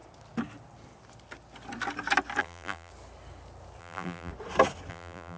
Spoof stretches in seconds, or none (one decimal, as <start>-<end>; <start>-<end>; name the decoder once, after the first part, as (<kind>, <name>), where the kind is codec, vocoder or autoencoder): 2.4-2.9 (vocoder, BigVGAN v2); 3.8-4.3; 4.9-5.4